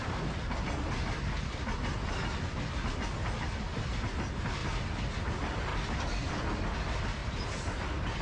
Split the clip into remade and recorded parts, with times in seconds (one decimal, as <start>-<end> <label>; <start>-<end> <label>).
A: 0.0-5.7 recorded; 5.7-6.3 remade; 6.3-7.2 recorded; 7.2-7.7 remade; 7.7-8.2 recorded